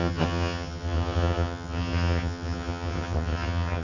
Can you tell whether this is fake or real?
fake